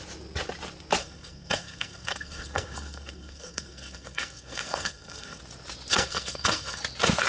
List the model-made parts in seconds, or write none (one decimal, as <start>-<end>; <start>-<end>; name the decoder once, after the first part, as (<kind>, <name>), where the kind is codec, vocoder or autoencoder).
1.0-5.4 (codec, SNAC); 5.9-6.8